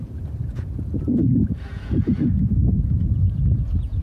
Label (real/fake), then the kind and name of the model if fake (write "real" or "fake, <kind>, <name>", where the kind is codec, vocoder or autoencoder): fake, vocoder, Vocos